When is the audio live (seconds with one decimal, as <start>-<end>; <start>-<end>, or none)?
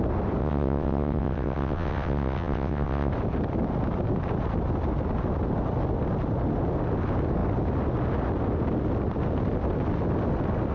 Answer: 0.0-0.4; 3.1-10.7